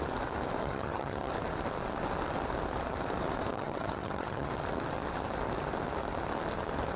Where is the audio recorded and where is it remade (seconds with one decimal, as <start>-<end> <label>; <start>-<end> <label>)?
0.0-0.6 recorded; 0.6-1.3 remade; 1.3-3.5 recorded; 3.5-4.5 remade; 4.5-7.0 recorded